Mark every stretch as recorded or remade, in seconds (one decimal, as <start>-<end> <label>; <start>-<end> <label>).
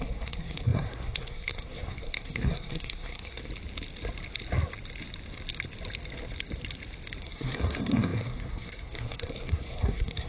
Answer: 0.0-3.4 remade; 3.4-7.2 recorded; 7.2-10.3 remade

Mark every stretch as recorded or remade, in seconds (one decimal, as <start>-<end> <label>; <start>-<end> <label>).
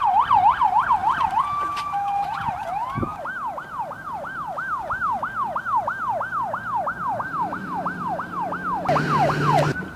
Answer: 0.0-10.0 recorded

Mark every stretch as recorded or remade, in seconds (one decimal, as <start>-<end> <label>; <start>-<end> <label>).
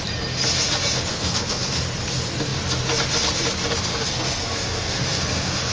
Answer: 0.0-1.1 recorded; 1.1-1.8 remade; 1.8-3.9 recorded; 3.9-5.7 remade